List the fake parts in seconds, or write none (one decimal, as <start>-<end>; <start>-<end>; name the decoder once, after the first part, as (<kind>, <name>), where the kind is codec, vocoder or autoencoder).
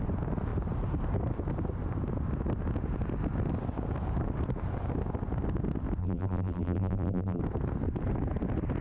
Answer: 6.0-7.4 (vocoder, BigVGAN v2)